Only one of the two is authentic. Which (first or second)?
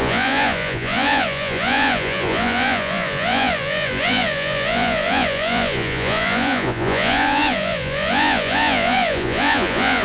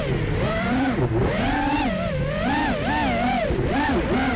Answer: second